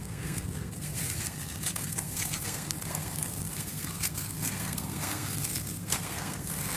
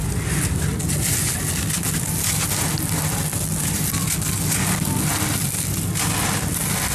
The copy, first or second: first